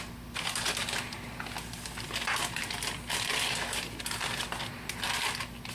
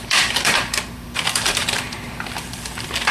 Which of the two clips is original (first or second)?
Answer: first